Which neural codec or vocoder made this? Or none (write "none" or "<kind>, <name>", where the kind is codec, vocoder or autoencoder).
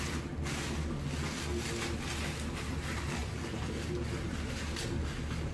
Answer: none